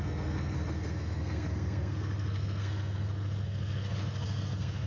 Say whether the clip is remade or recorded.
remade